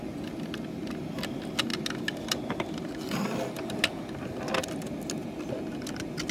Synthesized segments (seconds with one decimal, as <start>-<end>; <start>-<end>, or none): none